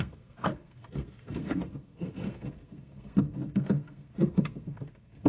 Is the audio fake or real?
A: fake